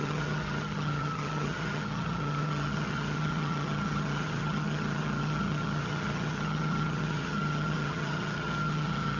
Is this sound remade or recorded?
remade